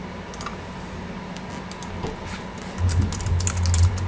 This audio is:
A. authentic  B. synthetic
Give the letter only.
A